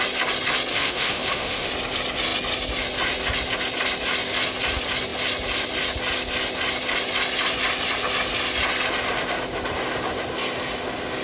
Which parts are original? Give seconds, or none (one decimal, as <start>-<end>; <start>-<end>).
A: 0.0-0.7; 1.7-11.2